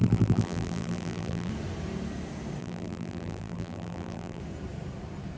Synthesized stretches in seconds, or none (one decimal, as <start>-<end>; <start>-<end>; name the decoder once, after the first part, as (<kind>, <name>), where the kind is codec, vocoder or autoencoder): 0.0-1.5 (vocoder, BigVGAN v2); 2.6-4.4